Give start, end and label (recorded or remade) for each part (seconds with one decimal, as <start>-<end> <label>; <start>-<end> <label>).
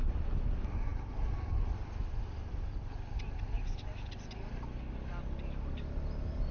0.0-6.5 recorded